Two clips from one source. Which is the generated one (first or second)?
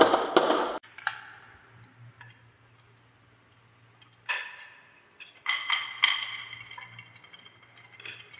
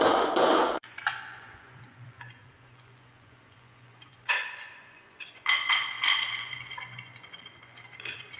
second